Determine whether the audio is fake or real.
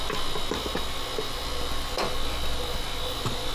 real